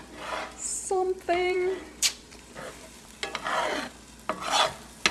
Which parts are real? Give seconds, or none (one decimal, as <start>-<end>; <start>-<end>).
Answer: 0.0-0.7; 3.1-5.1